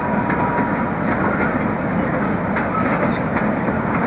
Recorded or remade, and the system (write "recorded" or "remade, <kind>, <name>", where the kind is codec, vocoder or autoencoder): recorded